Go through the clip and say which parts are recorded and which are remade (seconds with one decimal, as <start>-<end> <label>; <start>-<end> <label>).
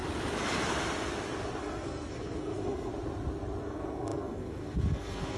0.0-1.6 recorded; 1.6-2.9 remade; 2.9-3.6 recorded; 3.6-5.4 remade